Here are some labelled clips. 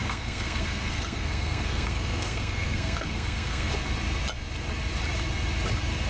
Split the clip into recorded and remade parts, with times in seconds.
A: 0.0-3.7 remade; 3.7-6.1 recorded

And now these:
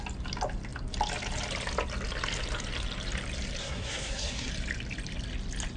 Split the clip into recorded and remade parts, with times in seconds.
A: 0.0-3.6 recorded; 3.6-4.5 remade; 4.5-5.8 recorded

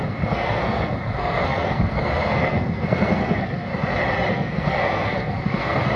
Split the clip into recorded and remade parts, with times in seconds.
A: 0.0-3.7 remade; 3.7-4.3 recorded; 4.3-6.0 remade